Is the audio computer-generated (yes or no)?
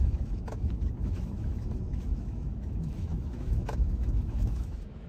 yes